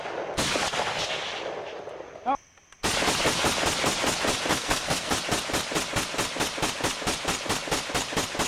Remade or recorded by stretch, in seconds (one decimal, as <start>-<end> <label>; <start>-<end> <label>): 0.0-4.5 recorded; 4.5-5.1 remade; 5.1-8.5 recorded